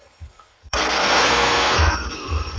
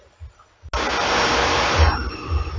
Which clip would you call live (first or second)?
second